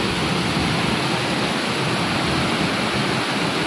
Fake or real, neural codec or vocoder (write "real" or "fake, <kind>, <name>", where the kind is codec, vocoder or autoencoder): real